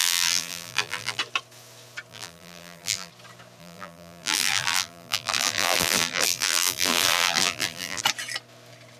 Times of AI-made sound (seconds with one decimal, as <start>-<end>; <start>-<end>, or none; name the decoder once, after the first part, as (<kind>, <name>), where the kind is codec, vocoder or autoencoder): 0.0-1.2 (vocoder, BigVGAN v2); 2.1-3.1; 3.6-8.0